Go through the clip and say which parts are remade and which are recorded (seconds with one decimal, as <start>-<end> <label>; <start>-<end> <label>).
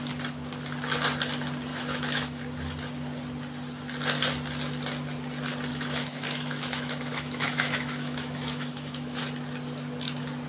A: 0.0-1.7 recorded; 1.7-2.4 remade; 2.4-5.7 recorded; 5.7-9.2 remade; 9.2-10.5 recorded